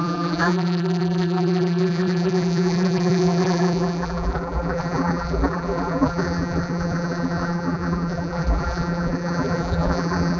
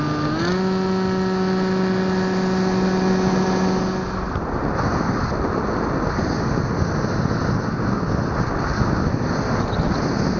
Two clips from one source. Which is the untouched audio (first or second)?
second